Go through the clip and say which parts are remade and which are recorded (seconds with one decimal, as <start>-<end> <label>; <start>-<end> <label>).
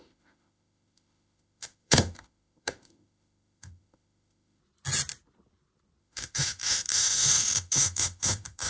0.0-4.6 remade; 4.6-6.0 recorded; 6.0-8.7 remade